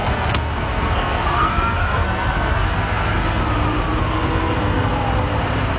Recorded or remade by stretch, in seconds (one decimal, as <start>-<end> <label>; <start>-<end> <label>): 0.0-3.4 remade; 3.4-4.0 recorded; 4.0-4.9 remade; 4.9-5.8 recorded